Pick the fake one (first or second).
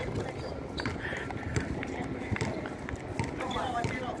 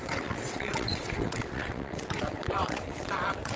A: second